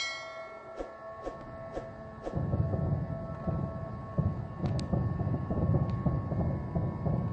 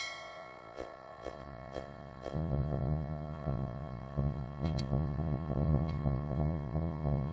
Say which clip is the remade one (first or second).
second